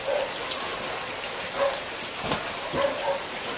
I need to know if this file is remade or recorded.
recorded